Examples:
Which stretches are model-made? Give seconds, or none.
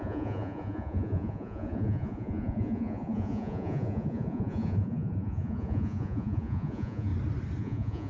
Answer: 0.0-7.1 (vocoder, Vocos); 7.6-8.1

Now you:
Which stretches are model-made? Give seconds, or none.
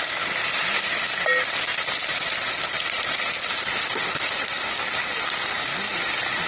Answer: none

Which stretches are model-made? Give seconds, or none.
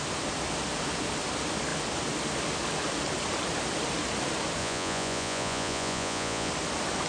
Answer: 4.6-6.5 (vocoder, Vocos)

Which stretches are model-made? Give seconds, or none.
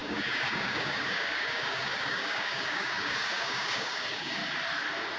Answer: 0.0-4.4 (codec, DAC)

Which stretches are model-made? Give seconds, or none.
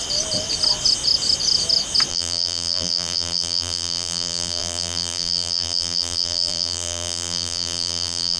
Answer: 2.1-8.4 (vocoder, BigVGAN v2)